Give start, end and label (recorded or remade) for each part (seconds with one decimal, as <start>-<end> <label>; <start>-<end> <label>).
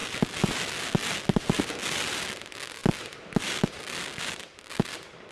0.0-5.3 recorded